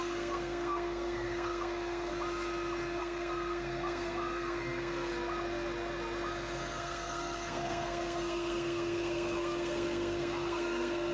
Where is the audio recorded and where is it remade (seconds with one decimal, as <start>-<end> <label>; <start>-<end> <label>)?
0.0-2.1 remade; 2.1-3.0 recorded; 3.0-5.1 remade; 5.1-6.8 recorded; 6.8-11.1 remade